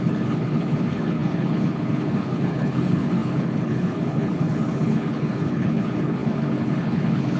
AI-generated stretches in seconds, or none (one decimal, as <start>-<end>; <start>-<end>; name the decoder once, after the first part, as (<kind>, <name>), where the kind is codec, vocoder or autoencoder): 0.0-7.4 (codec, HILCodec)